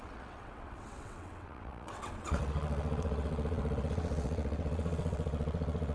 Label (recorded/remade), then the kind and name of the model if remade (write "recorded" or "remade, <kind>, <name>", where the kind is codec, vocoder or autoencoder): remade, vocoder, WaveNeXt